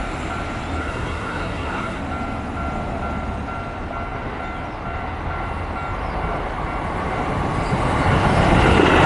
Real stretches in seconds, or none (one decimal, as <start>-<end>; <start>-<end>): 0.0-0.8; 2.0-9.1